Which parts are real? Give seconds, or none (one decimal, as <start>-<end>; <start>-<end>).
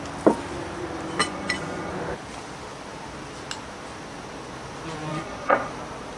0.0-1.2; 1.9-5.1; 5.7-6.2